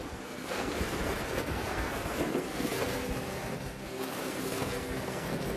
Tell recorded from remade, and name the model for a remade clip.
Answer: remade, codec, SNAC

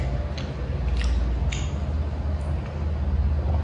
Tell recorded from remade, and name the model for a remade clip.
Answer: recorded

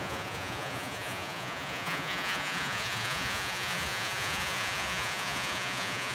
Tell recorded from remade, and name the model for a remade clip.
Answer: remade, vocoder, Vocos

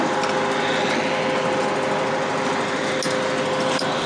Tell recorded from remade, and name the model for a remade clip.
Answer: recorded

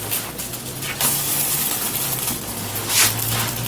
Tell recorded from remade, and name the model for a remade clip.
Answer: recorded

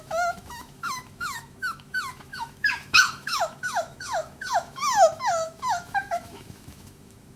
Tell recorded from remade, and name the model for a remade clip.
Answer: remade, autoencoder, DAC-VAE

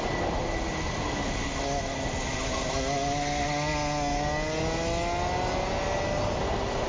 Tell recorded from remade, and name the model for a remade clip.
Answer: recorded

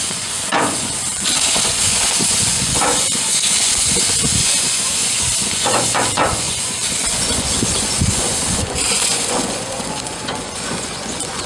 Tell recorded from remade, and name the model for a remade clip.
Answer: remade, vocoder, Vocos